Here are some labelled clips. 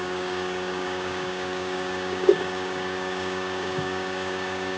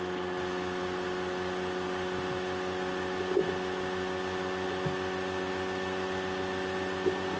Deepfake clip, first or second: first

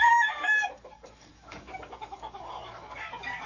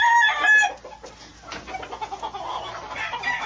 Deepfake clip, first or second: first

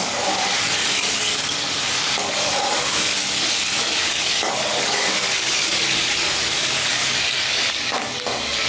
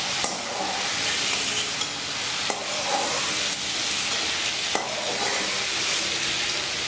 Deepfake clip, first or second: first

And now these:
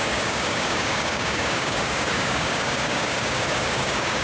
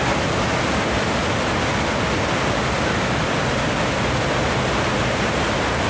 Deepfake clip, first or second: first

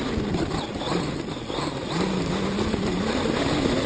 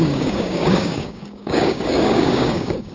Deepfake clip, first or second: second